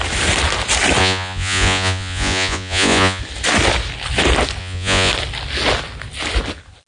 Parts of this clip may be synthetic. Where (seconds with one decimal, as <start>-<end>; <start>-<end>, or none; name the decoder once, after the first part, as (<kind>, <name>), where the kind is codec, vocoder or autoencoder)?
1.0-3.2 (vocoder, Vocos); 4.6-5.1